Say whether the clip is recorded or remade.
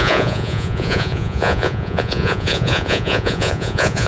remade